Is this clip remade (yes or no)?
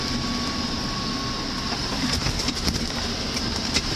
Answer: no